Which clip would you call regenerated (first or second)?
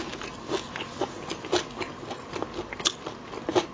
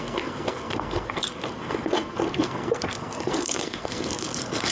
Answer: second